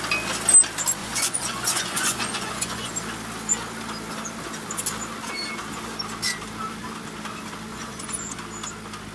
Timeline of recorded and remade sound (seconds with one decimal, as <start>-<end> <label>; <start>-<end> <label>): 0.0-1.0 recorded; 1.0-2.9 remade; 2.9-7.7 recorded; 7.7-8.4 remade; 8.4-9.1 recorded